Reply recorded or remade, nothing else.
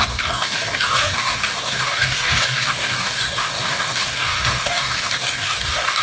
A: remade